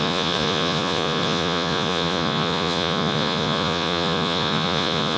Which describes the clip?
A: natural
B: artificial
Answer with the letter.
B